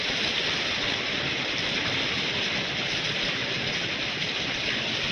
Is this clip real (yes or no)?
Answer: yes